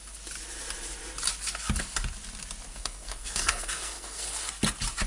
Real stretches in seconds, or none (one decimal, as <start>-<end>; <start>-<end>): 0.0-2.7; 4.5-5.1